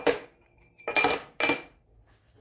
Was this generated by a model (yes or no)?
no